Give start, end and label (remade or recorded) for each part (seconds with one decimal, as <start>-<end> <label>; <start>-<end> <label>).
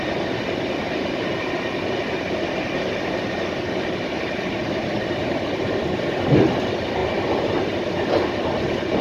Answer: 0.0-9.0 remade